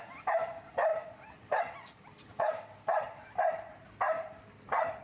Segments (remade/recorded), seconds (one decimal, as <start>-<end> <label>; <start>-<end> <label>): 0.0-5.0 recorded